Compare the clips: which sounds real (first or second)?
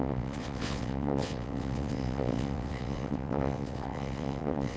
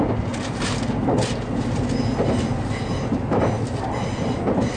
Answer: second